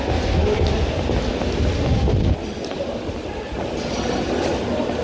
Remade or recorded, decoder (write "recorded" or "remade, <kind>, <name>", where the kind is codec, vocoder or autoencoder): recorded